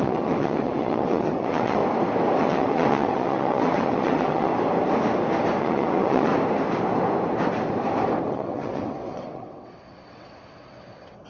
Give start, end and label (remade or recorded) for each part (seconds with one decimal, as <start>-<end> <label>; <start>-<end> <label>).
0.0-1.8 remade; 1.8-2.4 recorded; 2.4-4.5 remade; 4.5-5.6 recorded; 5.6-6.3 remade; 6.3-8.3 recorded; 8.3-11.3 remade